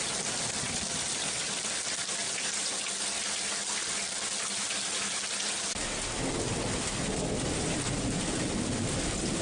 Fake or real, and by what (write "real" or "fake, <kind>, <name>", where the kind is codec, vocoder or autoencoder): real